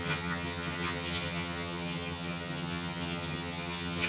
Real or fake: fake